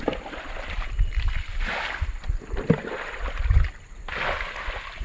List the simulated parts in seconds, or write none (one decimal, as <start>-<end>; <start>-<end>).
none